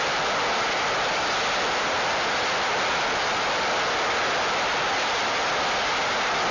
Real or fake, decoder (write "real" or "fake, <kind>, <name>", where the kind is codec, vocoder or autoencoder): real